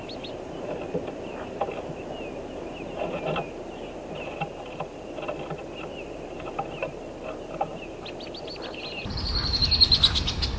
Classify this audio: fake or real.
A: real